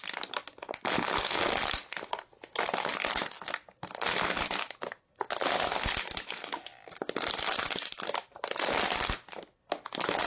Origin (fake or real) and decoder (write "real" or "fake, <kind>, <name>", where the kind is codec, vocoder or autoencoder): real